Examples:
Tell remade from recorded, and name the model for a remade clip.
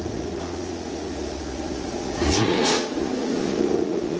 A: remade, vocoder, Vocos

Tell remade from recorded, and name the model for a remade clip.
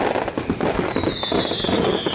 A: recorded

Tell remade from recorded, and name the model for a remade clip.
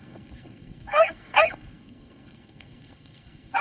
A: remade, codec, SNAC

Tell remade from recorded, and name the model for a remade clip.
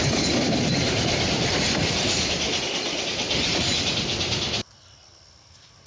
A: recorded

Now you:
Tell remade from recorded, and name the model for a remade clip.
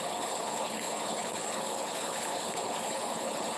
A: remade, codec, HILCodec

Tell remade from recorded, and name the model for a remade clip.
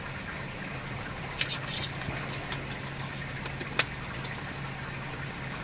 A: recorded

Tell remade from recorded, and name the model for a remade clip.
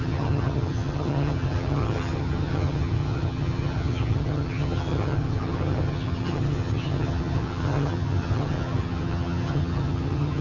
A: remade, vocoder, HiFi-GAN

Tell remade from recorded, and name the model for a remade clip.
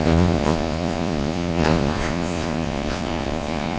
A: remade, vocoder, Vocos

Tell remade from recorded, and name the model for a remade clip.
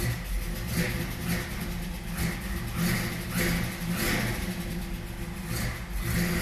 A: recorded